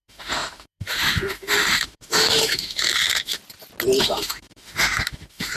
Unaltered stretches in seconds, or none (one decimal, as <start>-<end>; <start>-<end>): 3.4-4.0